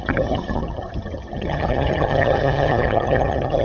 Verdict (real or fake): fake